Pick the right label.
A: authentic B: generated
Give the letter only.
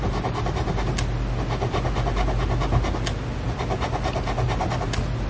A